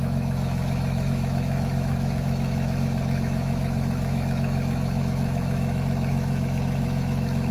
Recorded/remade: remade